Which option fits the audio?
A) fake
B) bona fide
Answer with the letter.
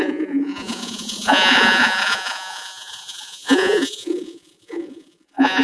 A